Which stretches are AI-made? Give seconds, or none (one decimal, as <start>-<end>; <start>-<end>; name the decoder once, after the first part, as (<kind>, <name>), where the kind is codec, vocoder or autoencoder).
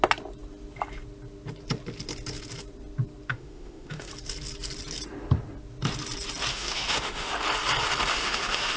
3.3-4.1 (autoencoder, DAC-VAE); 6.5-7.3; 8.1-8.8